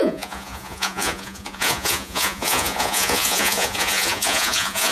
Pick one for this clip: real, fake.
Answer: fake